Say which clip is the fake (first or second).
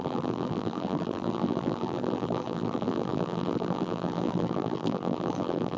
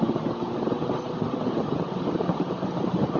first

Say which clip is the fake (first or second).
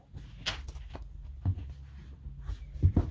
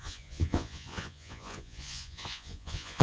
second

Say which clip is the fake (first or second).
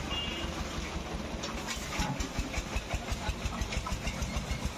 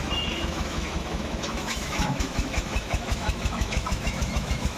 second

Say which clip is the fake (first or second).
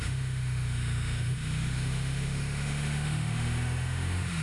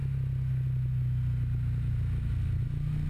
first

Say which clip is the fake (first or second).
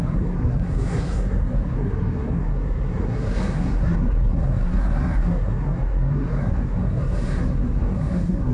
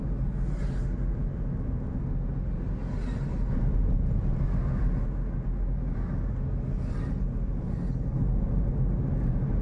first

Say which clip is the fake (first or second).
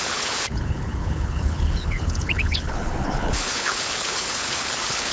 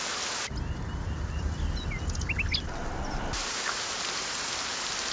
first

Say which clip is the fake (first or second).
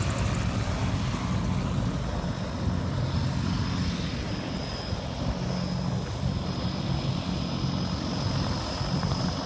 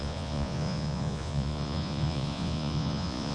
second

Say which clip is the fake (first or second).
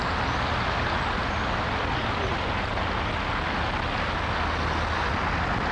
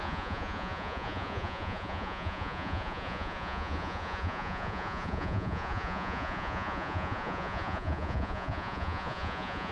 second